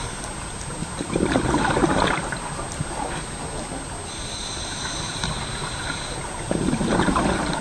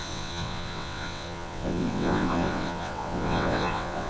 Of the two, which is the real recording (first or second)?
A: first